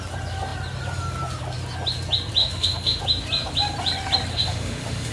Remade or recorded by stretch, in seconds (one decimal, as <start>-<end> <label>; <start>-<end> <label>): 0.0-2.4 recorded; 2.4-3.0 remade; 3.0-4.3 recorded; 4.3-5.1 remade